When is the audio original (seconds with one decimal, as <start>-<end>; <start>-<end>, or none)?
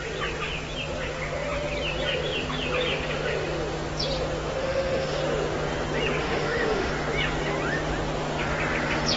0.0-4.6; 5.2-6.2; 6.9-9.2